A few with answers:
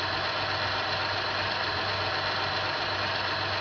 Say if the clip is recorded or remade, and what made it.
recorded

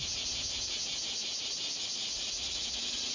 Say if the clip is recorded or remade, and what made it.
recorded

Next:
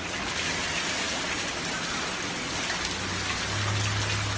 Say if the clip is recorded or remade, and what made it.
recorded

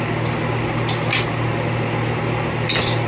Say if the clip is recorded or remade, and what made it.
recorded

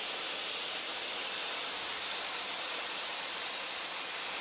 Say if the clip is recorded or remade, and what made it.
recorded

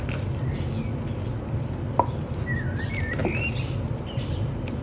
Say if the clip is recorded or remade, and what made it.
recorded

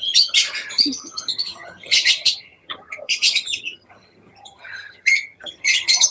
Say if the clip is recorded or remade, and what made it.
remade, vocoder, HiFi-GAN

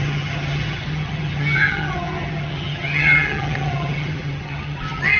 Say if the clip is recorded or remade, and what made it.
remade, vocoder, HiFi-GAN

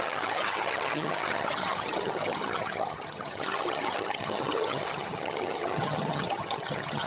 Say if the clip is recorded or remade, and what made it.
remade, vocoder, HiFi-GAN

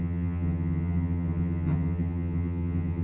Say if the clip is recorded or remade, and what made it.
remade, vocoder, HiFi-GAN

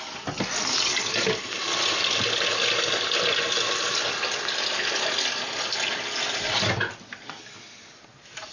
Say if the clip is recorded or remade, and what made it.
recorded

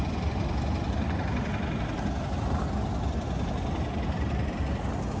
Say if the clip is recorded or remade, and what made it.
recorded